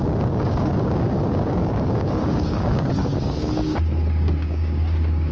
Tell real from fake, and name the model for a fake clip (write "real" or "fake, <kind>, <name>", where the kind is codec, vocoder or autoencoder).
fake, codec, DAC